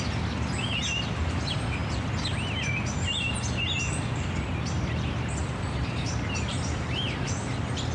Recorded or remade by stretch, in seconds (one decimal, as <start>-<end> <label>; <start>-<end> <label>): 0.0-5.4 recorded; 5.4-6.1 remade; 6.1-6.5 recorded; 6.5-7.4 remade; 7.4-7.9 recorded